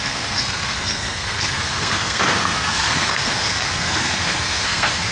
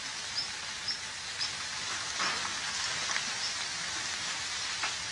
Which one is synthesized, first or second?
first